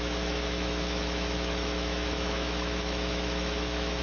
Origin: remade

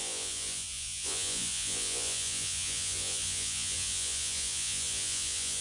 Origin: remade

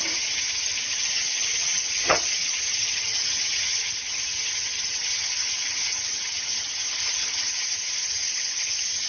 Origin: remade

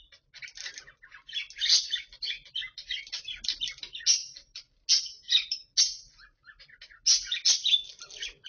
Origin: recorded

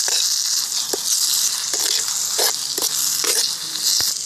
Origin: recorded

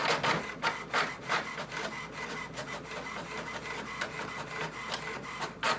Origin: recorded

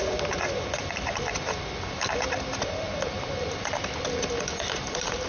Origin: recorded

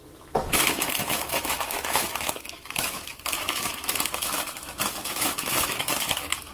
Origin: remade